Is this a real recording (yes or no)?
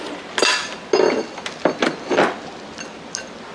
yes